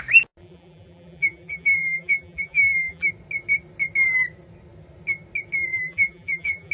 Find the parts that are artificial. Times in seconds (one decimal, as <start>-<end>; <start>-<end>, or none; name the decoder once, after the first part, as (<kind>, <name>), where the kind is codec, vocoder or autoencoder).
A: 0.4-3.1 (vocoder, BigVGAN v2); 5.7-6.7